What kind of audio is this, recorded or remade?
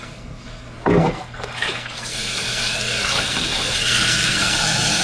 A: remade